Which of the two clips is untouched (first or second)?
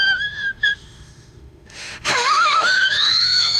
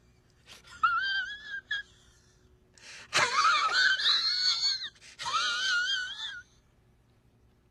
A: second